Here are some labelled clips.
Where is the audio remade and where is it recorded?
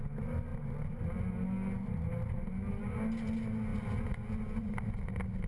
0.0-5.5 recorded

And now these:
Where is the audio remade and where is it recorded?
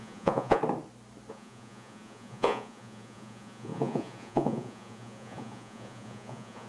0.0-0.6 remade; 0.6-1.3 recorded; 1.3-6.7 remade